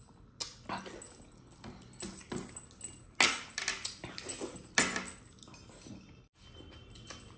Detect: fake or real real